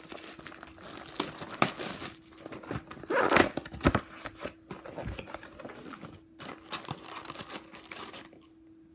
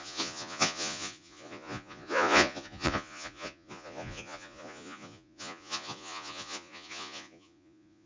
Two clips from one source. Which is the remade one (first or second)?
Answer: second